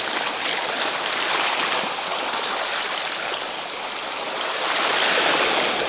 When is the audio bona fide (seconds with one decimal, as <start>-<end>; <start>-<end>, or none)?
0.0-5.9